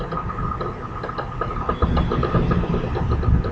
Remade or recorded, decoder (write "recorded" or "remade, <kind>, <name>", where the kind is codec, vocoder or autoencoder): recorded